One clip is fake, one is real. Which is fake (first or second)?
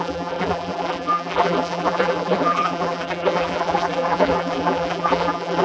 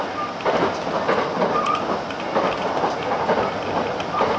first